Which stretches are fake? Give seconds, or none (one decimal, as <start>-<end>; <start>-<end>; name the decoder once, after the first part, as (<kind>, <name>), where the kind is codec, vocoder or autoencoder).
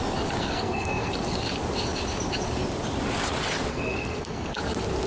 0.4-1.1 (codec, SNAC); 3.7-4.6